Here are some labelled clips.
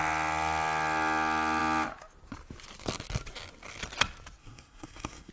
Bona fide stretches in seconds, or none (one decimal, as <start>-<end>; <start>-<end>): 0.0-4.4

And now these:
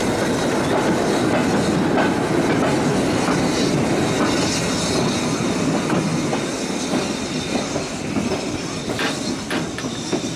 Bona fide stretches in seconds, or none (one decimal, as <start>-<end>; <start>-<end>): 0.0-10.4

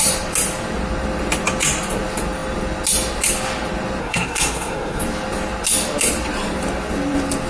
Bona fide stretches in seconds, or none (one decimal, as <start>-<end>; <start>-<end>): 0.0-4.0; 5.0-7.5